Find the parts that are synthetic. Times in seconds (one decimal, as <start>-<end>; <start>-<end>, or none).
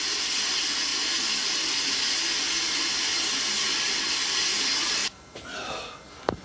none